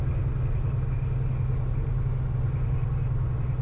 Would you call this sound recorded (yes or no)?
yes